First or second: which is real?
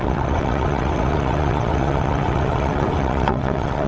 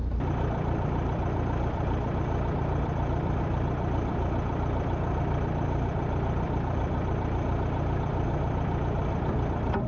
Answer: second